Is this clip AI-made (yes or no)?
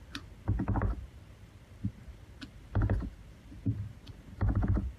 no